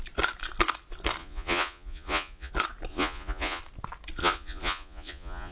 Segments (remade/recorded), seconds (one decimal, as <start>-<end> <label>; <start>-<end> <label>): 0.0-1.2 recorded; 1.2-2.5 remade; 2.5-2.9 recorded; 2.9-3.6 remade; 3.6-4.2 recorded; 4.2-5.5 remade